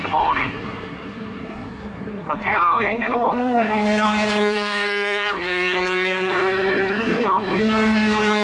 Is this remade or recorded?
remade